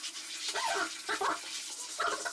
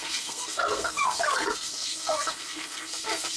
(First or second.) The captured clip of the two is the first